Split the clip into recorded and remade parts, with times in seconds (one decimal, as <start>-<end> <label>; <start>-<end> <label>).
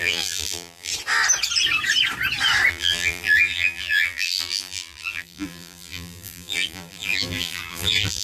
0.0-0.9 remade; 0.9-2.7 recorded; 2.7-8.2 remade